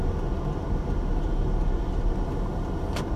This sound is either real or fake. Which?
real